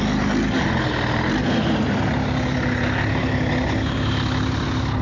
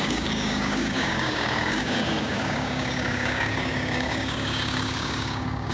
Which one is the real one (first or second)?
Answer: first